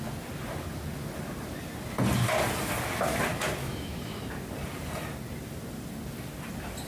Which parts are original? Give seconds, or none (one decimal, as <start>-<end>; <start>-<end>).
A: 0.0-3.6; 4.2-6.9